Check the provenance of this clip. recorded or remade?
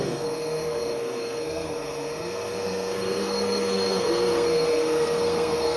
remade